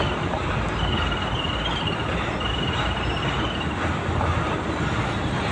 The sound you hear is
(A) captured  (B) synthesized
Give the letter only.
A